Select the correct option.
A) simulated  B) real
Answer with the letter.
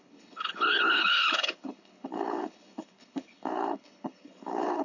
A